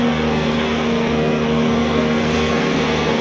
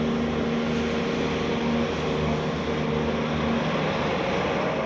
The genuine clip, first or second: second